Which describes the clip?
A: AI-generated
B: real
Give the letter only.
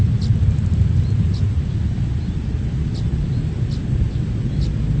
B